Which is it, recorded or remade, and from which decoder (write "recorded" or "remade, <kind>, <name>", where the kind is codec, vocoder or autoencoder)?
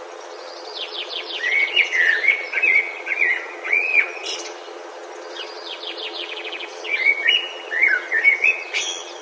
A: remade, vocoder, Vocos